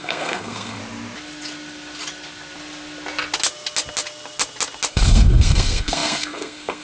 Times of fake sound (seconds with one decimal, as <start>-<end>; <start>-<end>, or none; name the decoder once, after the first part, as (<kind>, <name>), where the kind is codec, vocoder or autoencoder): 0.0-0.8 (codec, SNAC); 4.9-6.8